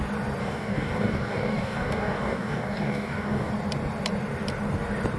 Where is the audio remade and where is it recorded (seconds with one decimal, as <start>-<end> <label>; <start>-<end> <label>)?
0.0-0.4 recorded; 0.4-3.5 remade; 3.5-5.2 recorded